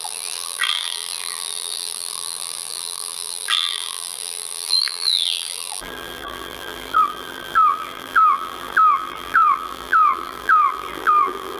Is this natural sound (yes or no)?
no